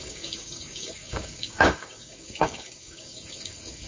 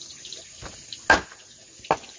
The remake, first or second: first